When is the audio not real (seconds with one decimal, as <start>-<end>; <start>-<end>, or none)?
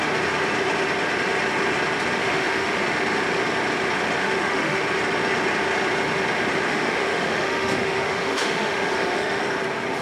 2.2-2.8; 4.2-4.8; 6.7-9.4